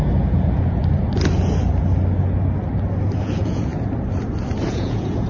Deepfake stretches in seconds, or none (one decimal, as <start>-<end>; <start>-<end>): 0.0-0.8; 3.2-3.7; 4.7-5.3